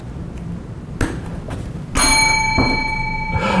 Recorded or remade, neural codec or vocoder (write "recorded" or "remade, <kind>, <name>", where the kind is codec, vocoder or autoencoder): recorded